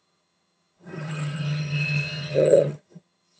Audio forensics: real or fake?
fake